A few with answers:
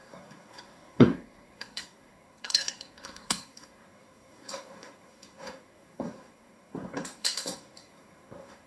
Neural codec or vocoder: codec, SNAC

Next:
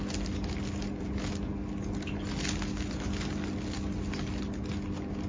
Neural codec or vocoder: none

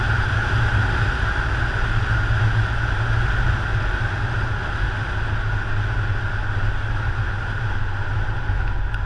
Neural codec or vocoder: none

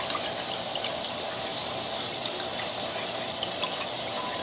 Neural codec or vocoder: none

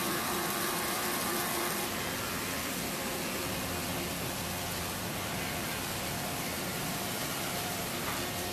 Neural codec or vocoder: none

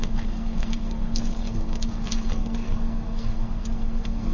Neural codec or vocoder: codec, SNAC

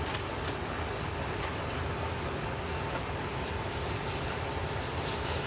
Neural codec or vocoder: none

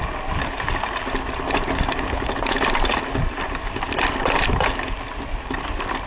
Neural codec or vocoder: none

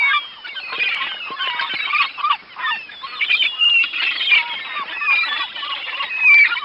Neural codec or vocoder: none